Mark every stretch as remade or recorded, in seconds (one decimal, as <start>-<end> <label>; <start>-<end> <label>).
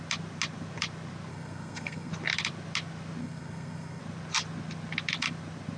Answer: 0.0-1.3 recorded; 1.3-2.1 remade; 2.1-3.2 recorded; 3.2-4.0 remade; 4.0-5.8 recorded